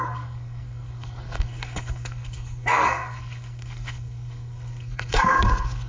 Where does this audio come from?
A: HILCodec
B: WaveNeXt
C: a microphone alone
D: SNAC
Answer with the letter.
D